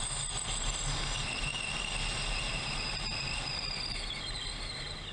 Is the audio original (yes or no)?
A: yes